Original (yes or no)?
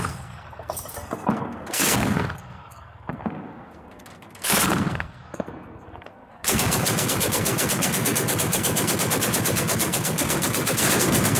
no